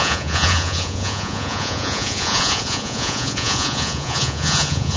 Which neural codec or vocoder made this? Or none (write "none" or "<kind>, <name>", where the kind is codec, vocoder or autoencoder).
vocoder, Vocos